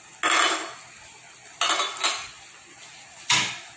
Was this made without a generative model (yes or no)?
yes